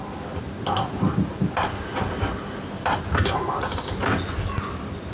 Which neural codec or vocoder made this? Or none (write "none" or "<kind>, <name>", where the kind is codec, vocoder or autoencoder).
none